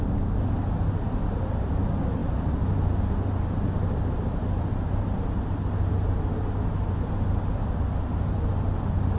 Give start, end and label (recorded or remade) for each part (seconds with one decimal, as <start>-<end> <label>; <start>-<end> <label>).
0.0-4.4 recorded; 4.4-5.0 remade; 5.0-9.2 recorded